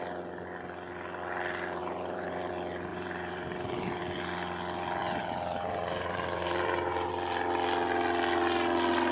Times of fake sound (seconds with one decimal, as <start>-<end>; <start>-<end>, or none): 1.8-2.5; 2.9-4.0; 5.0-7.1